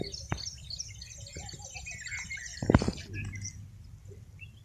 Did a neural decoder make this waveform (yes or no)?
no